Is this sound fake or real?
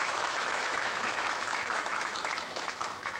fake